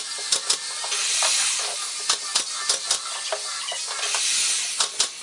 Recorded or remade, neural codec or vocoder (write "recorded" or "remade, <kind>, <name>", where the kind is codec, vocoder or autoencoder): recorded